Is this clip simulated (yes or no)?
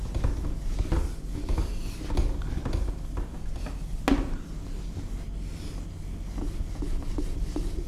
no